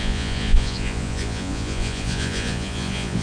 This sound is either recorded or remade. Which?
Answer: remade